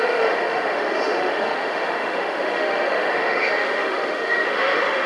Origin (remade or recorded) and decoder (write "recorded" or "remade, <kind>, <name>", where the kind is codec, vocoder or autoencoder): remade, autoencoder, DAC-VAE